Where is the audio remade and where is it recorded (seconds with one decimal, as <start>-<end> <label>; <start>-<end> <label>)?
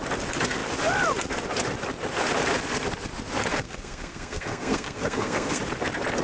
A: 0.0-3.5 recorded; 3.5-5.6 remade; 5.6-6.2 recorded